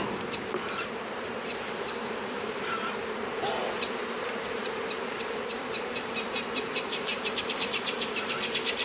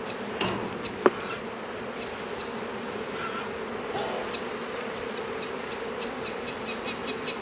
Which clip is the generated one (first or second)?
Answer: first